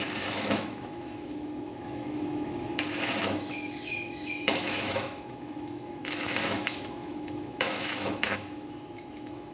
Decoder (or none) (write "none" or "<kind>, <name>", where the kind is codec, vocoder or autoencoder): autoencoder, DAC-VAE